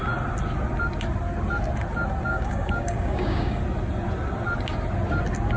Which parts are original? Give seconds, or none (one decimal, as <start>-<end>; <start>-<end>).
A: 0.0-2.3; 3.6-5.6

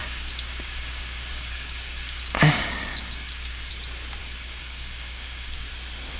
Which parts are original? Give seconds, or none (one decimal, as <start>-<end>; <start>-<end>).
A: 3.7-4.2; 5.7-6.2